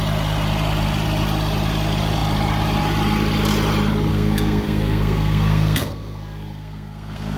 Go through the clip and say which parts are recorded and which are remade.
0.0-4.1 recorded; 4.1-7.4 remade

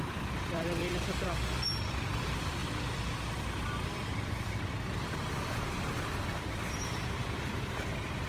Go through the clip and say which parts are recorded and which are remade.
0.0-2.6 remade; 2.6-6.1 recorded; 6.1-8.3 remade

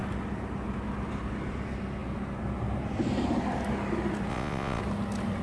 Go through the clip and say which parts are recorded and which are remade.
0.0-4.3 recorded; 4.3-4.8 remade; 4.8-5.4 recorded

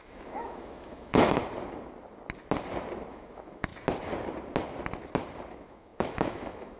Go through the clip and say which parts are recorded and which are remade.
0.0-1.4 remade; 1.4-3.1 recorded; 3.1-3.7 remade; 3.7-5.5 recorded; 5.5-6.8 remade

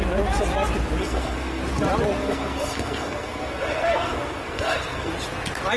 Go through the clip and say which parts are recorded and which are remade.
0.0-1.0 recorded; 1.0-1.6 remade; 1.6-2.2 recorded; 2.2-5.1 remade; 5.1-5.8 recorded